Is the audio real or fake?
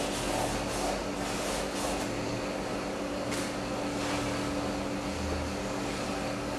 real